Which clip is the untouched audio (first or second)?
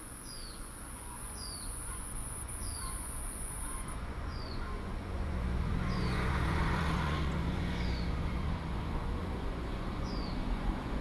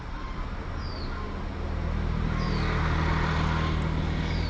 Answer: second